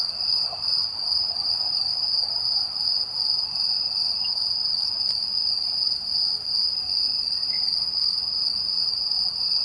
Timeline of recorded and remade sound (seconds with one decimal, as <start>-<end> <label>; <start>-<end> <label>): 0.0-9.6 recorded